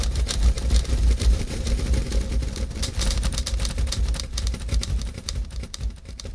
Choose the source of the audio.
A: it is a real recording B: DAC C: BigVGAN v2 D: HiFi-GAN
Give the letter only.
C